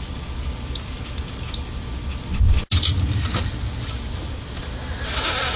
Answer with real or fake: real